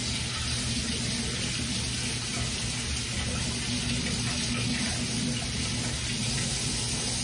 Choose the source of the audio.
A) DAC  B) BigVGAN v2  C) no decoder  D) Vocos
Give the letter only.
C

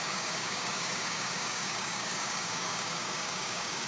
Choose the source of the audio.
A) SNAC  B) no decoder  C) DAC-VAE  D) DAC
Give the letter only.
D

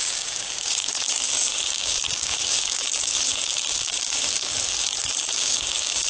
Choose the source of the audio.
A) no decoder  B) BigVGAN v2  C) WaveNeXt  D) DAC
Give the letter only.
D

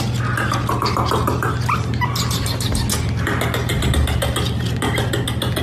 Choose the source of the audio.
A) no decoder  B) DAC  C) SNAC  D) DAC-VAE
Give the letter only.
A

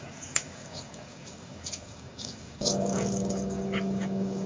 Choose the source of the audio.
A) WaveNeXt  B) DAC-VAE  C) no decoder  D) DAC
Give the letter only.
D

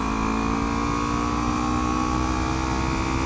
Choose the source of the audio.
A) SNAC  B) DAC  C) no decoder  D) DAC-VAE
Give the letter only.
C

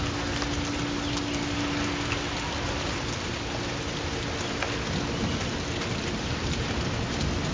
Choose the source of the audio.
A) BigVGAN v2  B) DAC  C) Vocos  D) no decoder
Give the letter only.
D